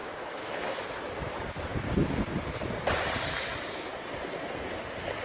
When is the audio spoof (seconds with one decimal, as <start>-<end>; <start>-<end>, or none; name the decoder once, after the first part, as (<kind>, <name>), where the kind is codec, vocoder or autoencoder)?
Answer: 0.0-0.9 (autoencoder, DAC-VAE)